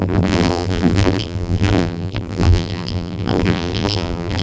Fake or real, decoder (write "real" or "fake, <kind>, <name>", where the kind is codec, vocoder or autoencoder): fake, vocoder, BigVGAN v2